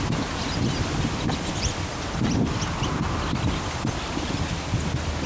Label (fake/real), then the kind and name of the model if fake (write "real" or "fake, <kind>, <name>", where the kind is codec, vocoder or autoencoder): real